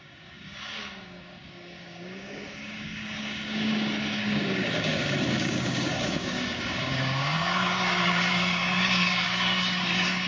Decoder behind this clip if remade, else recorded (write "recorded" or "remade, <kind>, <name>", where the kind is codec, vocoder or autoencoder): remade, codec, DAC